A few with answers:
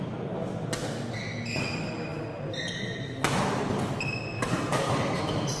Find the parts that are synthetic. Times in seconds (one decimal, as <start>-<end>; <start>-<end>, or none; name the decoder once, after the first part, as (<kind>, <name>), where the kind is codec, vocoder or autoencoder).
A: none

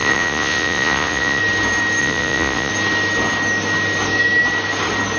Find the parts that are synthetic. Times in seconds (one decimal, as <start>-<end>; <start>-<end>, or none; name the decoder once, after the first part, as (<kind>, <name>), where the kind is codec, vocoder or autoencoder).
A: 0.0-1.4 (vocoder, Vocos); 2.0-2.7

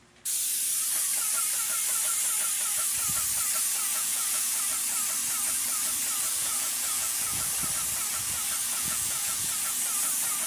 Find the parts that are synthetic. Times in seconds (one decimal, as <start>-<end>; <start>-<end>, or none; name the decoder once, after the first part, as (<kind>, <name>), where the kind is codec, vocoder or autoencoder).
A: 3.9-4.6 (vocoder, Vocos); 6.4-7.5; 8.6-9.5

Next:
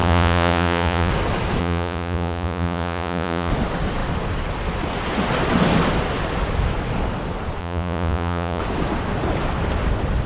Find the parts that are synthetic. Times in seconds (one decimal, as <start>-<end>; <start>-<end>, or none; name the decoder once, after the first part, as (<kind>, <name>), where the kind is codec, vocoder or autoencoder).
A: 0.0-1.1 (vocoder, Vocos); 1.6-3.5; 7.6-8.6

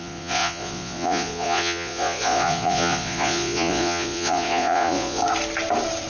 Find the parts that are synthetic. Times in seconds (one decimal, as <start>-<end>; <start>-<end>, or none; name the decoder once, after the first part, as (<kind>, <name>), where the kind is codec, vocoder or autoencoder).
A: 0.0-5.2 (vocoder, Vocos)